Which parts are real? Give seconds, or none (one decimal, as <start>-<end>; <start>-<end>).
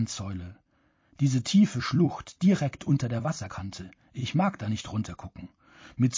0.0-0.8; 3.5-4.2